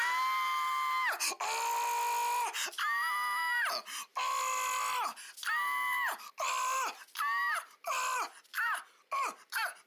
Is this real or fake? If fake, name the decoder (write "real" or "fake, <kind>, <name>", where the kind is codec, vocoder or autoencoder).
real